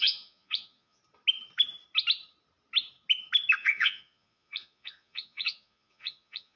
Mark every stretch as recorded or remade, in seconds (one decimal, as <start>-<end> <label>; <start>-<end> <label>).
0.0-1.0 remade; 1.0-3.6 recorded; 3.6-6.6 remade